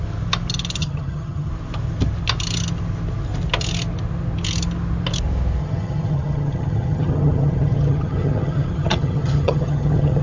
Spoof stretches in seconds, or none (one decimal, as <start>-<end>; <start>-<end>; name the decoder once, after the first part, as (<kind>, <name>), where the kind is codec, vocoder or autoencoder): 0.8-1.5 (vocoder, HiFi-GAN); 5.6-10.2

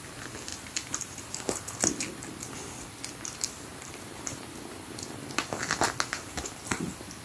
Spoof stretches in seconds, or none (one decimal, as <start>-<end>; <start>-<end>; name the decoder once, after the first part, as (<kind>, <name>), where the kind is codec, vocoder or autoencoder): 0.5-1.8 (vocoder, BigVGAN v2); 3.7-4.9